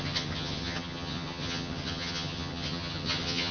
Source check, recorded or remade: remade